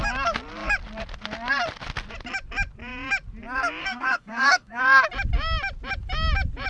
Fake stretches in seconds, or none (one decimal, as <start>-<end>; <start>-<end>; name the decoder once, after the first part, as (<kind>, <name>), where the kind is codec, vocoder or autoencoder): 3.8-4.8 (codec, SNAC)